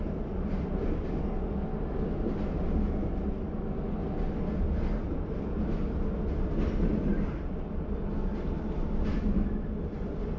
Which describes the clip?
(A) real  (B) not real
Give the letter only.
A